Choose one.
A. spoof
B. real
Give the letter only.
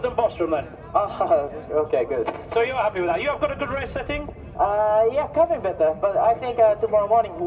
B